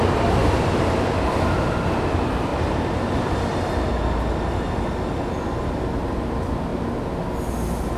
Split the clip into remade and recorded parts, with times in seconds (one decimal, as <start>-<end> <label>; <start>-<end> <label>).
0.0-8.0 recorded